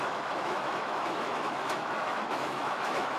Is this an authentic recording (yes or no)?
no